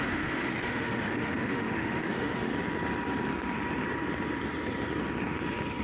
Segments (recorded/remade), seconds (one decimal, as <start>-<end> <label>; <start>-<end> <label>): 0.0-2.5 remade; 2.5-5.8 recorded